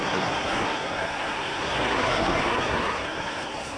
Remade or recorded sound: remade